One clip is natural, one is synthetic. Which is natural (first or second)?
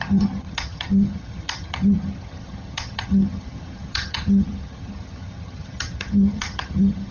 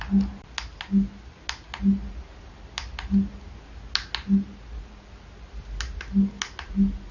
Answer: second